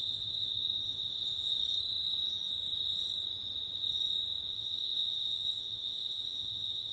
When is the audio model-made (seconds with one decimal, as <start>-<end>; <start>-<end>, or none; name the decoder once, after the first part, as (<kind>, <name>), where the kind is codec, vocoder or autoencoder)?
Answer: 0.0-1.6 (codec, ZipCodec); 4.5-6.9